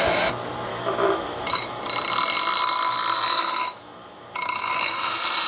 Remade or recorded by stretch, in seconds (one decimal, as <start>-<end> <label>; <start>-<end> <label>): 0.0-0.7 recorded; 0.7-1.8 remade; 1.8-3.3 recorded; 3.3-5.1 remade; 5.1-5.5 recorded